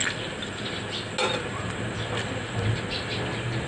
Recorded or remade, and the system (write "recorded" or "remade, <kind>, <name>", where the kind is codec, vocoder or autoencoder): recorded